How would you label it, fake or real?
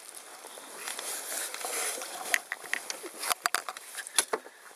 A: real